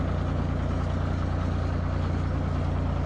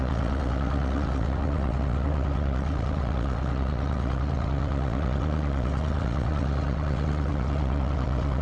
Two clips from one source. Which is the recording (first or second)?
first